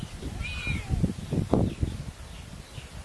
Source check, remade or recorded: recorded